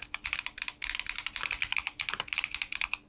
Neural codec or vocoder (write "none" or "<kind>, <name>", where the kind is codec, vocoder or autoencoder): none